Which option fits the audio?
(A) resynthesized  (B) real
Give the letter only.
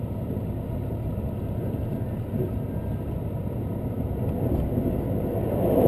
B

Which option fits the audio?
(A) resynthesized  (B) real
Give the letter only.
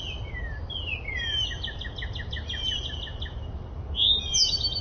B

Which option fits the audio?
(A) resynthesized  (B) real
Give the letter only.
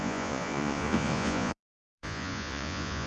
A